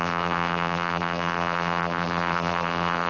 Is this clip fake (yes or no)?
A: yes